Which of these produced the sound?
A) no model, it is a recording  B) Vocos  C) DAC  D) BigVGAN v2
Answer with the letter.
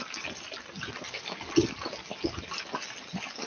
A